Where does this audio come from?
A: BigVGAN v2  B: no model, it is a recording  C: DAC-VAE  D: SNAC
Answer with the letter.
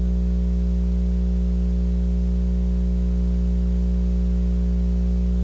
B